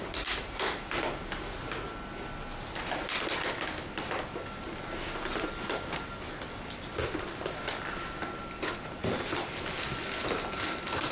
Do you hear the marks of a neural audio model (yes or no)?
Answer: no